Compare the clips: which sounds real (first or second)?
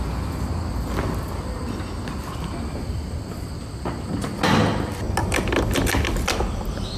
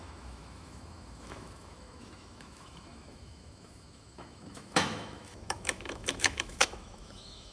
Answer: first